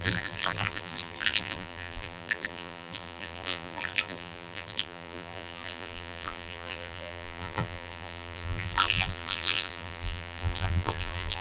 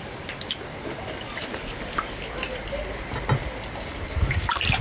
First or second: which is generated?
first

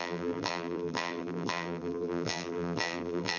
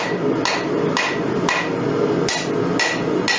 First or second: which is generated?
first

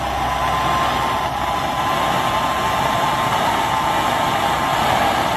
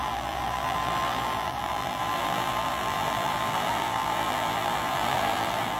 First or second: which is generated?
second